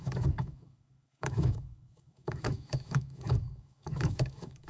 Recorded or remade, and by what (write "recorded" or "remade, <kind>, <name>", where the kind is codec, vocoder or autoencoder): remade, autoencoder, DAC-VAE